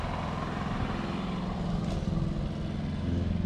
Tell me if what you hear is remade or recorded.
recorded